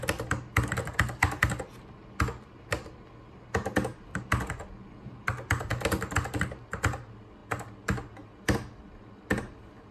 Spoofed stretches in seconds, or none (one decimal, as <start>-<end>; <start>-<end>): none